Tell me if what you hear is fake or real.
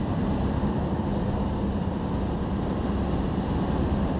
fake